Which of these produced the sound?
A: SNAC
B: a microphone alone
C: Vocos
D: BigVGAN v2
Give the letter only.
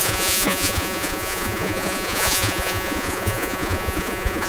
C